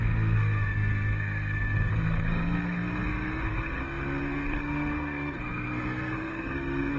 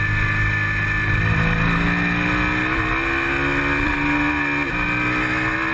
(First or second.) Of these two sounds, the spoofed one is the first